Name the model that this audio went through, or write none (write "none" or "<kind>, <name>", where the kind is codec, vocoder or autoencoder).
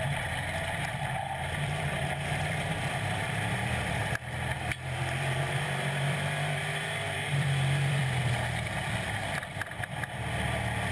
vocoder, BigVGAN v2